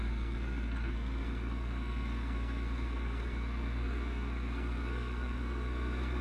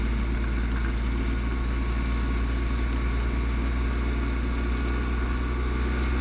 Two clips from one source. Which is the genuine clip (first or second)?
second